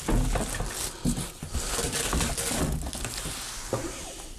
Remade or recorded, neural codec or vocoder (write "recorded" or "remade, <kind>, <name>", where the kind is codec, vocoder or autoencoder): recorded